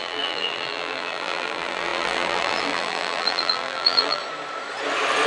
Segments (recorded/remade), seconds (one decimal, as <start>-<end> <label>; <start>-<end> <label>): 0.0-4.2 remade; 4.2-5.3 recorded